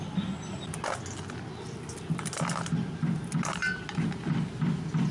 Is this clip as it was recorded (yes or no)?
yes